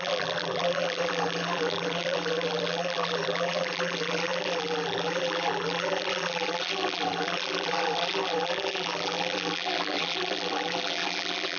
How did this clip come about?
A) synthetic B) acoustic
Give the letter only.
A